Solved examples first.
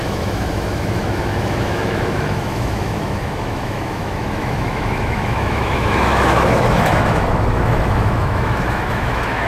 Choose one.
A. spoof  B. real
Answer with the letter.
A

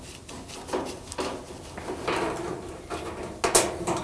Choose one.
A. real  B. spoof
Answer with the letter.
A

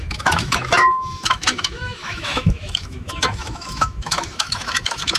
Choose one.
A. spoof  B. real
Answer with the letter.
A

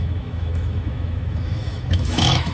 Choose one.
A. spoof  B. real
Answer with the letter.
A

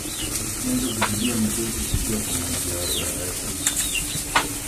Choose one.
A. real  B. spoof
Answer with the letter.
A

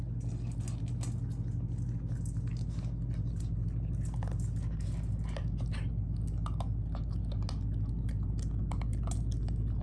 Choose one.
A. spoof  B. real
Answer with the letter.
B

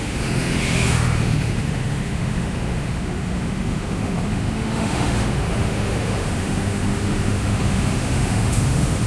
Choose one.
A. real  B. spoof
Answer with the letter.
B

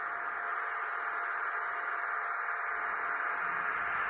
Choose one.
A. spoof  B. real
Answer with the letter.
B